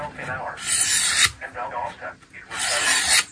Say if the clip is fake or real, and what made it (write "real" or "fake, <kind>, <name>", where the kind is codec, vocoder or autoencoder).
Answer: real